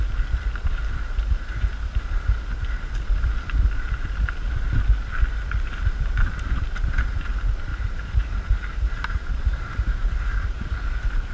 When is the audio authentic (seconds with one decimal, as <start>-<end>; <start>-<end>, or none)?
0.0-7.7; 10.6-11.3